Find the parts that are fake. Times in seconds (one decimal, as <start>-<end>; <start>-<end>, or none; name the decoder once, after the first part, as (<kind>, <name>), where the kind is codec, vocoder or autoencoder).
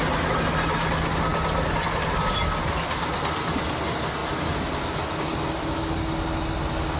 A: 4.2-5.1 (vocoder, BigVGAN v2)